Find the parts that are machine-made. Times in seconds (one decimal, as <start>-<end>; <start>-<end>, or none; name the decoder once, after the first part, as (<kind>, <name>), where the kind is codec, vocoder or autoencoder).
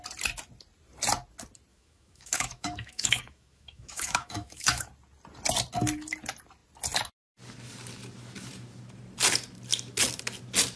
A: 1.7-4.9 (autoencoder, DAC-VAE)